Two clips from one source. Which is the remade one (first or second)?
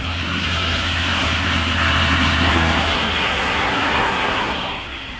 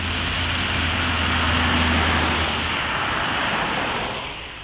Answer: first